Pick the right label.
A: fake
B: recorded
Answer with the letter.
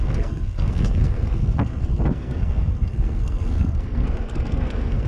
A